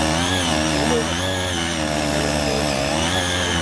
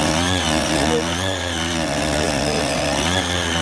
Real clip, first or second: first